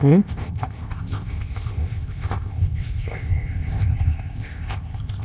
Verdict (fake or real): fake